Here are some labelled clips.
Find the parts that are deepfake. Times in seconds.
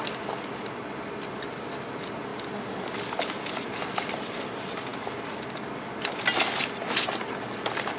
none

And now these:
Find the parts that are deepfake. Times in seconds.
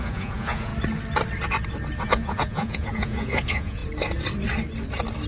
0.0-0.7 (vocoder, Vocos); 2.0-3.8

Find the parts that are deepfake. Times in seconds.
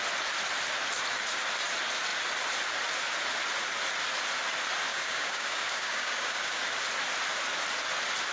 4.9-6.6 (codec, DAC)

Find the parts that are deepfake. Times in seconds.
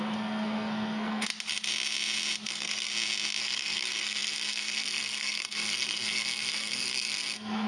0.0-1.3 (codec, SNAC); 2.5-2.9; 3.4-7.7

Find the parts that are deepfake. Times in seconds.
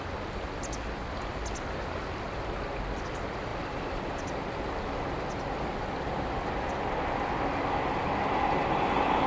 none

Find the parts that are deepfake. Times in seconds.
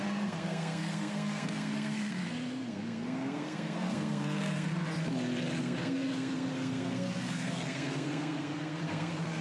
0.0-4.7 (codec, SNAC); 5.6-9.4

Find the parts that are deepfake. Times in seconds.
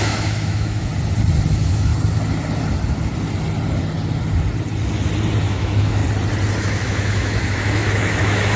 0.0-0.9 (autoencoder, DAC-VAE); 1.5-1.9; 5.4-6.0; 6.6-8.6